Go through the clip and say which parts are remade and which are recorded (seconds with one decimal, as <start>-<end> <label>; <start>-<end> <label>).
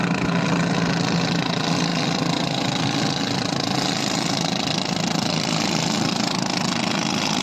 0.0-7.4 recorded